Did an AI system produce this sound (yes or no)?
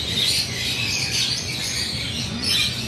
yes